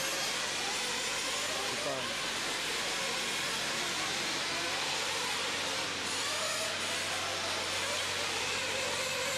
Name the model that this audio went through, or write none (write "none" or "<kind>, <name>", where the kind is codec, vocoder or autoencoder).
none